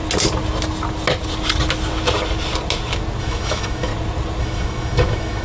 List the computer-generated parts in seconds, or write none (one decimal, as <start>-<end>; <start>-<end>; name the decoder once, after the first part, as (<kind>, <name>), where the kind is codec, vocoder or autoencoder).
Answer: 3.2-3.9 (autoencoder, DAC-VAE); 4.4-5.4